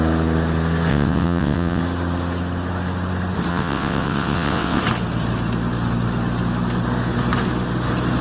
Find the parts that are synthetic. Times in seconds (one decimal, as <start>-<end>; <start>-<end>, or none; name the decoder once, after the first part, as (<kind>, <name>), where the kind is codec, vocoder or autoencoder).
0.9-1.8 (vocoder, WaveNeXt); 3.5-4.8